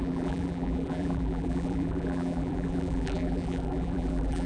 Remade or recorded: remade